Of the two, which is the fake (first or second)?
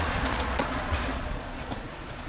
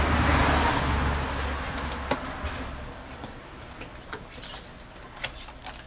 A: first